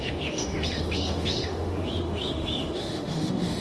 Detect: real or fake fake